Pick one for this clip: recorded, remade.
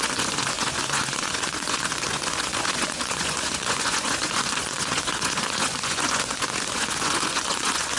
remade